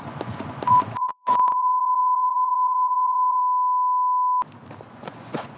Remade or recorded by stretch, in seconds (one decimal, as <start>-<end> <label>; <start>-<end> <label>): 0.0-3.4 remade; 3.4-4.9 recorded; 4.9-5.6 remade

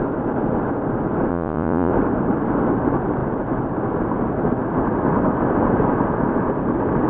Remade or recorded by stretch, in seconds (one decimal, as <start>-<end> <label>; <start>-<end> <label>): 0.0-1.3 recorded; 1.3-1.9 remade; 1.9-7.1 recorded

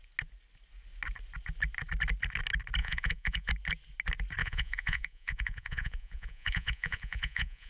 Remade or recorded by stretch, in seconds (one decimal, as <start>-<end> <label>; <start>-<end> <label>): 0.0-2.8 recorded; 2.8-3.5 remade; 3.5-4.4 recorded; 4.4-7.7 remade

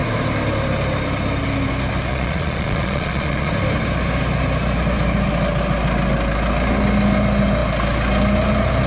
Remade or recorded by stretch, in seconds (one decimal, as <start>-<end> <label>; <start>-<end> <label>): 0.0-2.1 recorded; 2.1-3.5 remade; 3.5-8.9 recorded

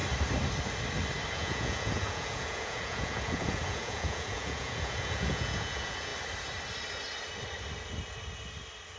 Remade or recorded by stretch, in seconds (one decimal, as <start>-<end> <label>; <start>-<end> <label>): 0.0-1.3 recorded; 1.3-6.1 remade; 6.1-9.0 recorded

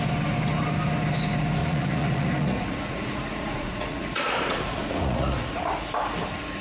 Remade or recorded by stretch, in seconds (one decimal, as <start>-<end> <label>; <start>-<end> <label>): 0.0-1.6 recorded; 1.6-5.6 remade; 5.6-6.6 recorded

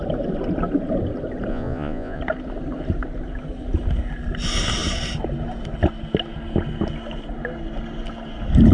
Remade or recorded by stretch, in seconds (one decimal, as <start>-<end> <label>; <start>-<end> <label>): 0.0-1.5 recorded; 1.5-2.2 remade; 2.2-8.7 recorded